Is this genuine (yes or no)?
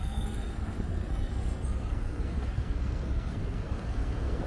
no